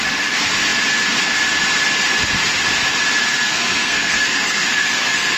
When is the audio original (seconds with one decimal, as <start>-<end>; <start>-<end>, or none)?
0.0-3.3